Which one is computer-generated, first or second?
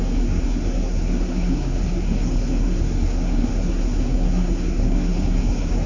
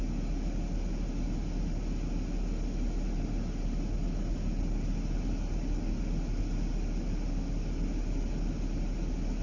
first